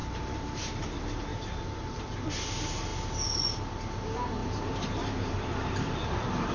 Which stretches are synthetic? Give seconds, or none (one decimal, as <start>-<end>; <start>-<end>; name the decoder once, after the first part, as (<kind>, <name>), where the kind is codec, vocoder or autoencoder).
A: 0.0-0.8 (vocoder, BigVGAN v2); 1.3-2.3; 4.4-5.9